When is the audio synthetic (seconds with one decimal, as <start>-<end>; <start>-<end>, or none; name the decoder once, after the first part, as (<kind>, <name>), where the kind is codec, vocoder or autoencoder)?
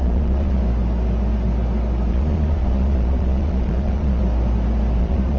0.0-0.6 (vocoder, Vocos); 2.1-4.2; 5.0-5.4